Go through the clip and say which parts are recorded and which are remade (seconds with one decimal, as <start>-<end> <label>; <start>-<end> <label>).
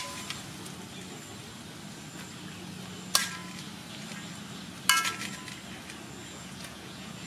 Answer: 0.0-6.2 recorded; 6.2-7.3 remade